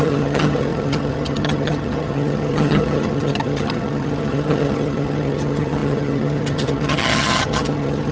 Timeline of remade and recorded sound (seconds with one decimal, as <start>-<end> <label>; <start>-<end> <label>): 0.0-8.1 remade